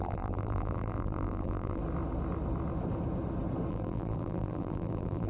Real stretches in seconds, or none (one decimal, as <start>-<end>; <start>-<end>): 1.8-3.7